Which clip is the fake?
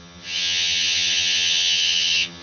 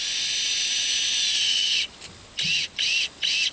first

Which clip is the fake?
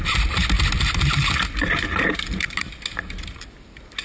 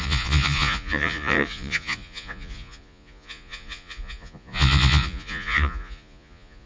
second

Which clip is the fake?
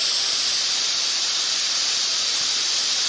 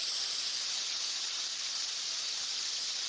second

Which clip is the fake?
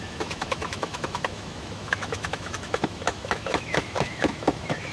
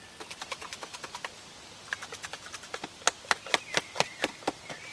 first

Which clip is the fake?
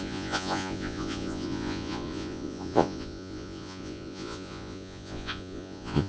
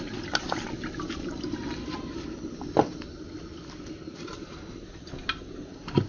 first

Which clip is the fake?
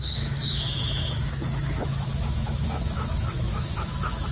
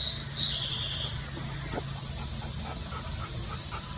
first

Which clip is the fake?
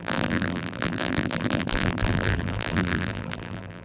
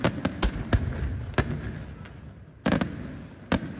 first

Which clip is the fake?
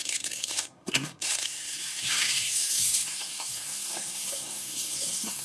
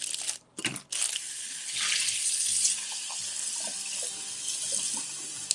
first